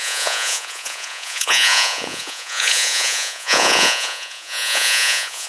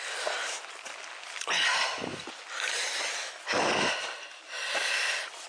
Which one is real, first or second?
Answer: second